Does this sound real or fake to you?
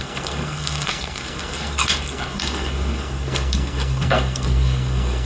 fake